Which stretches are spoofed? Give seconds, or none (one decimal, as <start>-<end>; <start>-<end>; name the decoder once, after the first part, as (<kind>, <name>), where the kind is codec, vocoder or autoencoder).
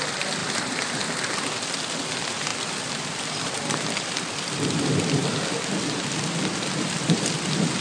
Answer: 0.4-1.0 (vocoder, BigVGAN v2); 2.5-7.2